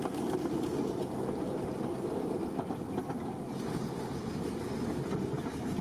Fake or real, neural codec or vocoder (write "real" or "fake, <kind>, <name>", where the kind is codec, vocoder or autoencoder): real